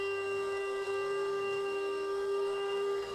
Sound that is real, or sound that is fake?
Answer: fake